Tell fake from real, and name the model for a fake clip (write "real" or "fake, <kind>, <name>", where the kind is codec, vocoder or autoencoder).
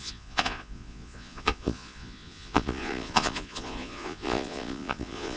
fake, vocoder, Vocos